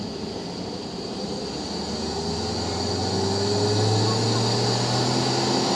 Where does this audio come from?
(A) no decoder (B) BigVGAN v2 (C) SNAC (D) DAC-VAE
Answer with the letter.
A